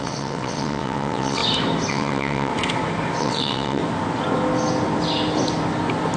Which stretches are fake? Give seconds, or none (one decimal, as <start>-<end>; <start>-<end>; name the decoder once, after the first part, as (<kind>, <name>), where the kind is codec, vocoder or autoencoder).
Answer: 0.0-1.4 (vocoder, WaveNeXt); 1.9-2.5; 3.2-3.8